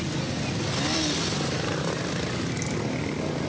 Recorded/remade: recorded